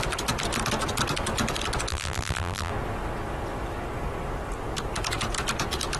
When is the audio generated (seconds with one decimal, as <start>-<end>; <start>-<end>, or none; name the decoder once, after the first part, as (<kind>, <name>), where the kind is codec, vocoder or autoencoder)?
1.9-2.7 (vocoder, BigVGAN v2)